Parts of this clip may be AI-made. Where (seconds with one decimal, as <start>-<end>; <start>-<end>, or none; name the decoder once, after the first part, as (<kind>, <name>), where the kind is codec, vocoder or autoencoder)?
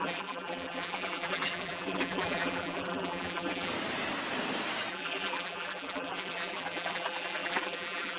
0.0-3.7 (vocoder, BigVGAN v2); 4.9-8.2